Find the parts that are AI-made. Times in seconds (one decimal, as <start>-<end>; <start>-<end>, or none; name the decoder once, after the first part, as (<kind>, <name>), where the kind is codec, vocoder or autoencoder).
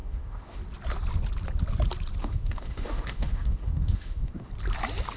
0.0-0.6 (autoencoder, DAC-VAE); 2.2-4.5